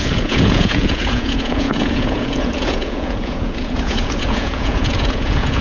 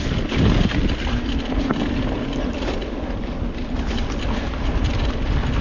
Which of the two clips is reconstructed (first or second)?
first